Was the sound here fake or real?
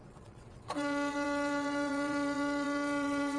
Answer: fake